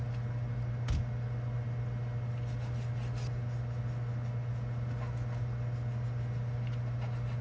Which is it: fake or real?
real